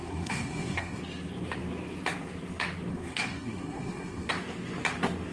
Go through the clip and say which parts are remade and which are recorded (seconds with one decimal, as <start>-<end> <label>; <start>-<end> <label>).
0.0-1.0 remade; 1.0-2.9 recorded; 2.9-4.3 remade; 4.3-5.3 recorded